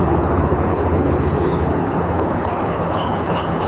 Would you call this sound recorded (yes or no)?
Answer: no